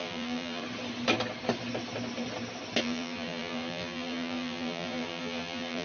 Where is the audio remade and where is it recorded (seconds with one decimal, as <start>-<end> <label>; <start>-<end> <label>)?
0.0-0.6 remade; 0.6-2.8 recorded; 2.8-5.8 remade